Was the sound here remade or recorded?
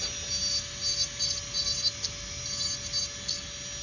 recorded